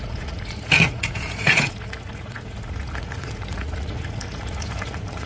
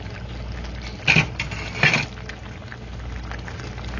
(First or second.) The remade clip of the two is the first